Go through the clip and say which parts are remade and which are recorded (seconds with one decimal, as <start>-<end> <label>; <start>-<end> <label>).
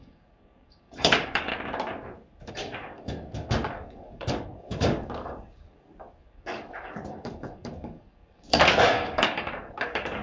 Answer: 0.0-1.5 remade; 1.5-2.5 recorded; 2.5-10.2 remade